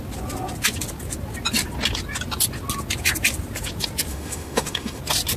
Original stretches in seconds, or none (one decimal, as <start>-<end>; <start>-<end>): 0.0-4.1; 5.0-5.4